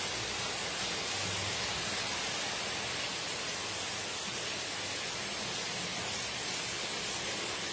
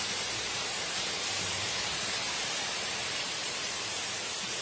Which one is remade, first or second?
second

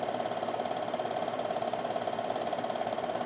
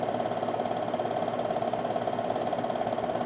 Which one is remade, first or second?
first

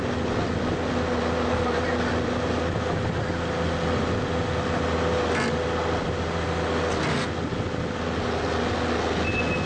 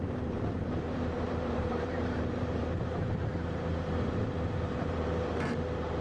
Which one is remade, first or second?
second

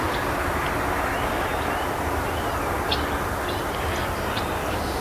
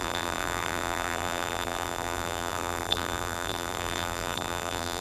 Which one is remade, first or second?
second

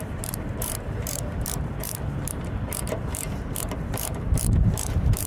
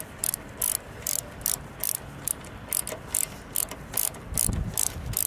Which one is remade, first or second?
first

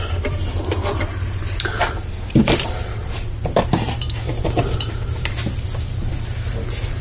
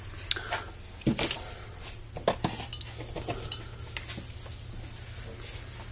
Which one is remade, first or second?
first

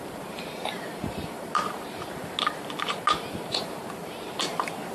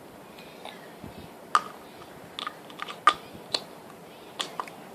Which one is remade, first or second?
first